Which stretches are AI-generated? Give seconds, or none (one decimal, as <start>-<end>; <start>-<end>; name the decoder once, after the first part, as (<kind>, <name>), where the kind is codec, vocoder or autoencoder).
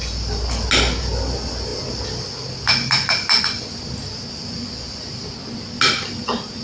none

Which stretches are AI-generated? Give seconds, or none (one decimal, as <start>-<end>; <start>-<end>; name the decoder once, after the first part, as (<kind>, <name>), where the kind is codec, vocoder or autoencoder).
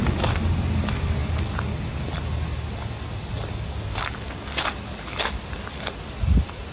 none